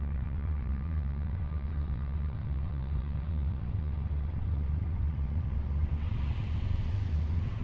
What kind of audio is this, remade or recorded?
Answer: remade